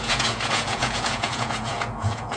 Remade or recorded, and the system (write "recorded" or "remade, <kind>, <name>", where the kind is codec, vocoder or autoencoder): remade, vocoder, Vocos